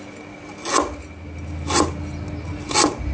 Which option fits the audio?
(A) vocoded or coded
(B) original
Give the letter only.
B